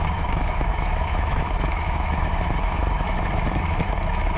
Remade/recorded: remade